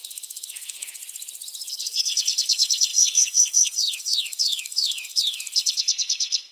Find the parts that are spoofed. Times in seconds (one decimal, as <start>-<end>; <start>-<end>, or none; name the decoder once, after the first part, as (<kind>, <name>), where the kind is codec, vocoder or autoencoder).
0.0-1.0 (codec, SNAC); 1.7-6.5